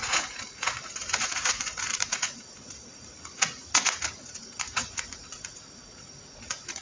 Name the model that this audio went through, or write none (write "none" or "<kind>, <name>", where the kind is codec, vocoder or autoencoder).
vocoder, Vocos